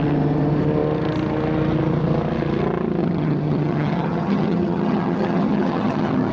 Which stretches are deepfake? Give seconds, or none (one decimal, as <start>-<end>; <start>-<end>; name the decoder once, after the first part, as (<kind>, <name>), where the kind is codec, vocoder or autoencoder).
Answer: 3.0-6.3 (vocoder, HiFi-GAN)